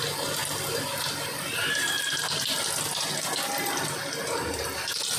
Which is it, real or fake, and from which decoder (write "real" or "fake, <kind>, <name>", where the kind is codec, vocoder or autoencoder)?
real